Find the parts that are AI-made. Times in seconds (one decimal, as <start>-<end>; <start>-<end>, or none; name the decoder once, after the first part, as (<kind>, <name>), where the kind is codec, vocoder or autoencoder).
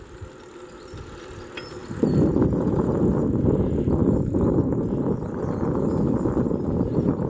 none